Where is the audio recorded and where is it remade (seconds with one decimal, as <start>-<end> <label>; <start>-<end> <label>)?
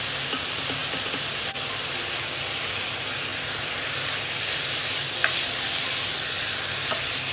0.0-3.3 recorded; 3.3-6.6 remade; 6.6-7.3 recorded